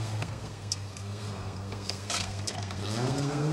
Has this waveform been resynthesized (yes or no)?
yes